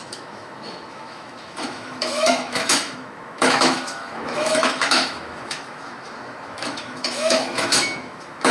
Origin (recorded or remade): remade